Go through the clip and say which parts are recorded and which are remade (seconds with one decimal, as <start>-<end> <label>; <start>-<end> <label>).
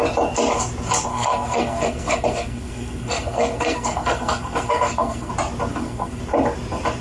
0.0-1.1 recorded; 1.1-5.3 remade; 5.3-5.7 recorded; 5.7-6.2 remade; 6.2-7.0 recorded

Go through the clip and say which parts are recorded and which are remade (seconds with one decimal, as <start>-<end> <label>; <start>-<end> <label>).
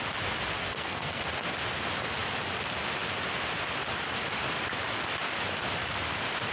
0.0-0.6 recorded; 0.6-1.2 remade; 1.2-6.5 recorded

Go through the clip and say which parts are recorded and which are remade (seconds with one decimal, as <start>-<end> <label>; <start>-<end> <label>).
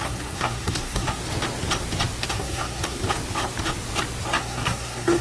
0.0-1.2 remade; 1.2-2.3 recorded; 2.3-3.0 remade; 3.0-4.4 recorded; 4.4-5.2 remade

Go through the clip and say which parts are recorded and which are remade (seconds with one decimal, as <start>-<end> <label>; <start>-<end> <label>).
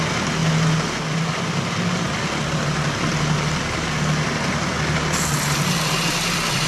0.0-6.7 recorded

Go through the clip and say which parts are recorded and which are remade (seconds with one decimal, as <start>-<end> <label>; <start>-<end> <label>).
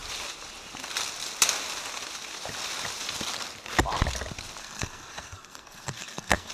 0.0-4.6 recorded; 4.6-6.5 remade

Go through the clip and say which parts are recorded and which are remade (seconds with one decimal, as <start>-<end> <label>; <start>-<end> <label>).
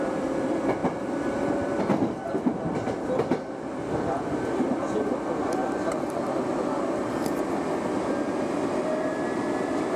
0.0-10.0 recorded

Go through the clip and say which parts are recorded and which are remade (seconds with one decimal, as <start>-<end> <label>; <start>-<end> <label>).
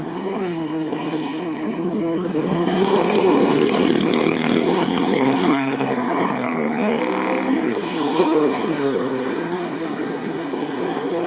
0.0-7.0 remade; 7.0-7.5 recorded; 7.5-11.3 remade